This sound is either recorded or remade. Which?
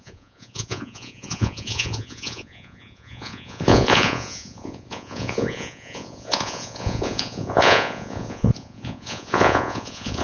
remade